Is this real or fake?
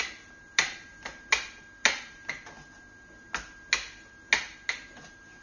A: real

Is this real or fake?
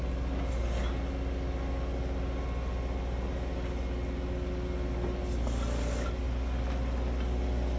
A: real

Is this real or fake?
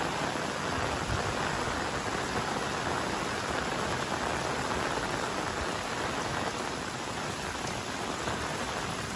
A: real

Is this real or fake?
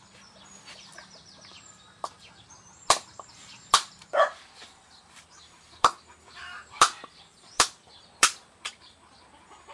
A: fake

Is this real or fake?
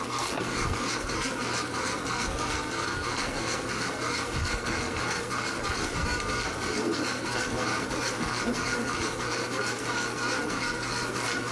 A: fake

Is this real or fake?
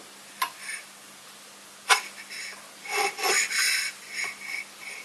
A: real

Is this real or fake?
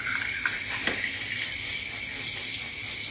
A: real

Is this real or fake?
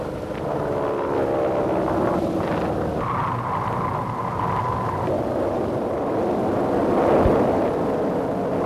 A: real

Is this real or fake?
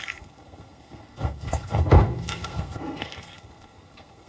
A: fake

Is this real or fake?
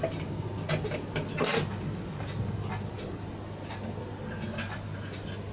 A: real